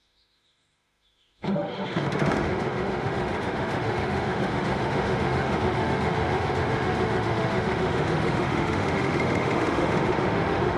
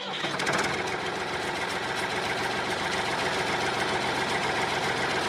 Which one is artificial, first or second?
first